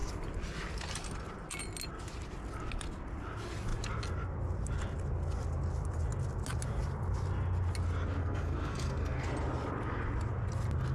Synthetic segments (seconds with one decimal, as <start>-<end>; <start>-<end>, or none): 8.2-9.3